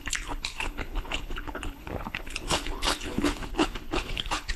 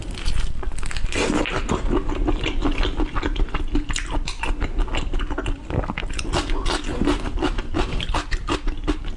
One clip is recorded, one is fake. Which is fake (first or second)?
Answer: first